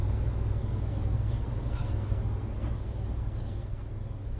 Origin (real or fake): fake